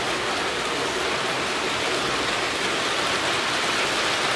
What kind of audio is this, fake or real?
real